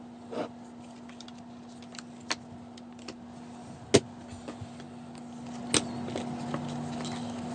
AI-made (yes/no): no